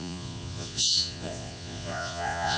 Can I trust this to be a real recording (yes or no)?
no